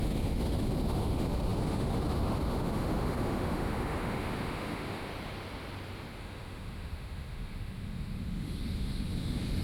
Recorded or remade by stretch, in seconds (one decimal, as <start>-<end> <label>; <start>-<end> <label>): 0.0-5.1 remade; 5.1-6.2 recorded; 6.2-9.6 remade